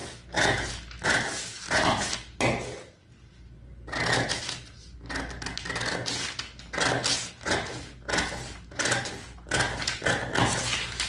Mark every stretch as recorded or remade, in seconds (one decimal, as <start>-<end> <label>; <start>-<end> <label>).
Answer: 0.0-11.1 recorded